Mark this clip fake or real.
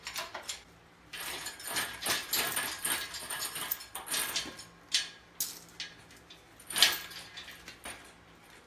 real